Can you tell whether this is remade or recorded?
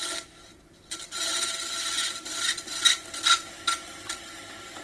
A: recorded